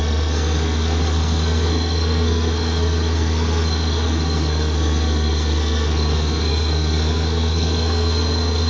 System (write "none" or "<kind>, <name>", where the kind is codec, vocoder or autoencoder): codec, SNAC